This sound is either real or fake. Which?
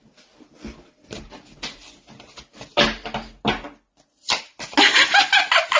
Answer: real